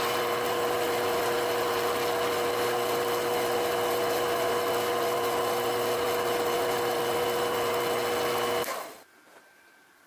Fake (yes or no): no